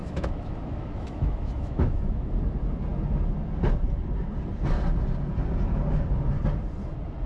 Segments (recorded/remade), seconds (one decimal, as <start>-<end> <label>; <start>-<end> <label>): 0.0-2.3 remade; 2.3-7.3 recorded